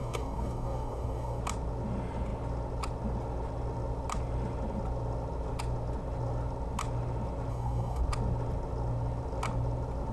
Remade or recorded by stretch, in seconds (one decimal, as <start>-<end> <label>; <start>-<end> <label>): 0.0-1.4 remade; 1.4-7.5 recorded; 7.5-8.0 remade; 8.0-10.1 recorded